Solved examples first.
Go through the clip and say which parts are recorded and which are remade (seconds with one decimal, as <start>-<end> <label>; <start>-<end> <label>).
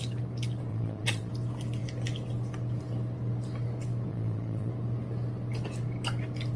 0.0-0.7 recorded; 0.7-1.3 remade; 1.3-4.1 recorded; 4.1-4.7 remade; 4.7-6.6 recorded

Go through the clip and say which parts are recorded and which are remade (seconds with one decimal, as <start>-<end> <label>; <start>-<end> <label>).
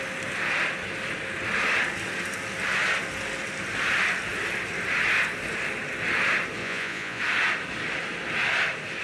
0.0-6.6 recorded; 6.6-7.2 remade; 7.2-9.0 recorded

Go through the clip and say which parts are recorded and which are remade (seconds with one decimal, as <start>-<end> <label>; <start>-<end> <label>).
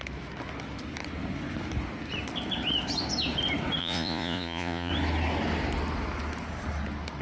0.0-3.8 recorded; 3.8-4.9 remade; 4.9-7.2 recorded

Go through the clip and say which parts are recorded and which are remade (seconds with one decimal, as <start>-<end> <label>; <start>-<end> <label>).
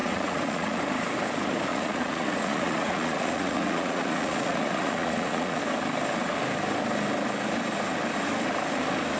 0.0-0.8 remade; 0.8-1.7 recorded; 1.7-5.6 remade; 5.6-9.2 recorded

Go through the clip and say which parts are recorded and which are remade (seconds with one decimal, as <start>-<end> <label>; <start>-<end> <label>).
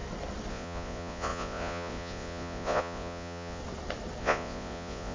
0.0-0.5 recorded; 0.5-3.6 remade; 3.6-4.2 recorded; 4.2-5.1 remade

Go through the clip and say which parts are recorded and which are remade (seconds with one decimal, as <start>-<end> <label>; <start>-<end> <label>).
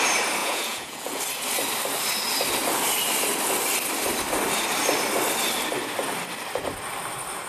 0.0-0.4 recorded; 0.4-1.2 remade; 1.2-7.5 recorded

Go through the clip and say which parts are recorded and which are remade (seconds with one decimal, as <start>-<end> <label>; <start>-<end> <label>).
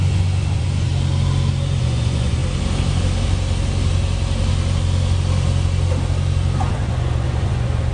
0.0-0.9 remade; 0.9-1.8 recorded; 1.8-2.4 remade; 2.4-6.7 recorded; 6.7-7.9 remade